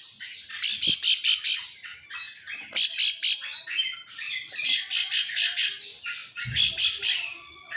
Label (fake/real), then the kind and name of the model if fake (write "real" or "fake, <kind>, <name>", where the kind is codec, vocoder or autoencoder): real